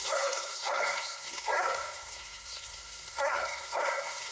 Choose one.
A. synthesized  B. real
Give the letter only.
A